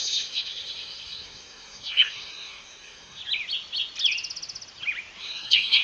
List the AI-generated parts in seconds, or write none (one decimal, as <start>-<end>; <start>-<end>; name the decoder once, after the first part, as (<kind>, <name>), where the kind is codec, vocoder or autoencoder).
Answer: 0.0-3.2 (codec, SNAC); 5.2-5.8